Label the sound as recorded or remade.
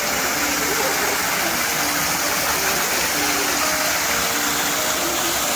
recorded